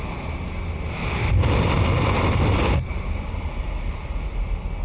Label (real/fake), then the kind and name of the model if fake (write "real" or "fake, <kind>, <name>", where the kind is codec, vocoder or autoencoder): real